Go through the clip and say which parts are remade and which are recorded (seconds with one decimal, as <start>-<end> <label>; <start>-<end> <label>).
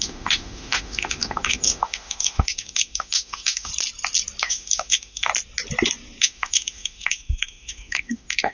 0.0-3.7 remade; 3.7-4.4 recorded; 4.4-5.3 remade; 5.3-6.2 recorded; 6.2-8.5 remade